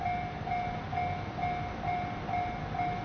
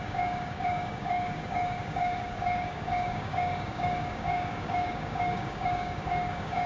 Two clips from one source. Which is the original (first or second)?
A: first